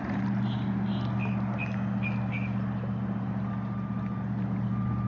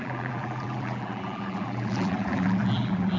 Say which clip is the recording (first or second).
first